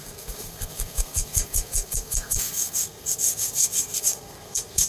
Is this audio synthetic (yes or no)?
yes